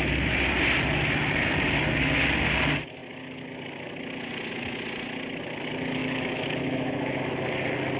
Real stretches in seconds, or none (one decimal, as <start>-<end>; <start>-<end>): 0.0-6.0; 7.2-8.0